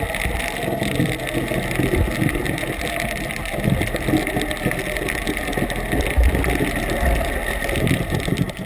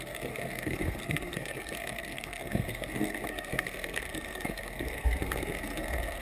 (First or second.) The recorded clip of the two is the first